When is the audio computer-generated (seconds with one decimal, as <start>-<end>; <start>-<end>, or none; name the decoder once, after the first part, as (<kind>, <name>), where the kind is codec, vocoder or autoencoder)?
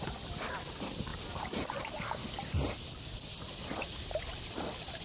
1.1-4.1 (vocoder, BigVGAN v2)